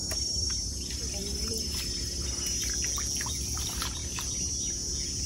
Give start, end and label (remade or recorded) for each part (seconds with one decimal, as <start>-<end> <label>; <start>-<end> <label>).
0.0-0.7 recorded; 0.7-1.2 remade; 1.2-3.4 recorded; 3.4-4.0 remade; 4.0-5.3 recorded